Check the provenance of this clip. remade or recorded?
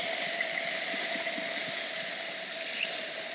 recorded